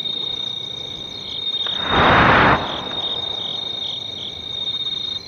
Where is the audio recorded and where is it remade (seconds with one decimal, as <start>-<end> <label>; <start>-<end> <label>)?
0.0-5.3 recorded